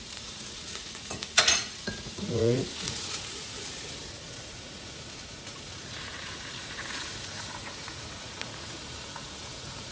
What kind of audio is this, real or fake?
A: fake